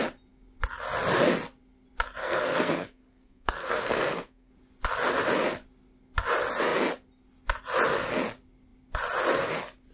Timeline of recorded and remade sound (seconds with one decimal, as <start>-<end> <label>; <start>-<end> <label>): 0.0-2.2 recorded; 2.2-4.5 remade; 4.5-9.9 recorded